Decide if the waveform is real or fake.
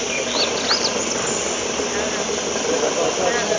real